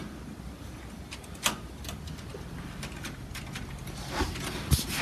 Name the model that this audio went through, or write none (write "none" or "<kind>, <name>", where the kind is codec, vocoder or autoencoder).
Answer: none